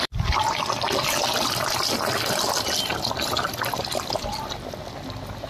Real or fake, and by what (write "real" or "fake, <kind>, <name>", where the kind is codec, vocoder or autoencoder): fake, vocoder, BigVGAN v2